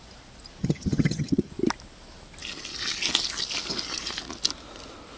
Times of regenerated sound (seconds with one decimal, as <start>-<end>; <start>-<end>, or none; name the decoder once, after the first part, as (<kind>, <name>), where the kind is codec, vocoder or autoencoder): 0.6-1.5 (vocoder, HiFi-GAN)